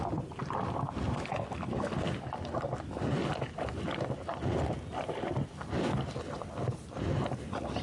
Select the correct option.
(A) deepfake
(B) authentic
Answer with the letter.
B